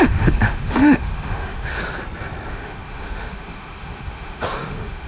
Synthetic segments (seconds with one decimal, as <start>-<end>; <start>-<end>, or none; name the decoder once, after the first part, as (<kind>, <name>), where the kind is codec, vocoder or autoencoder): 0.0-1.8 (autoencoder, DAC-VAE); 2.5-5.1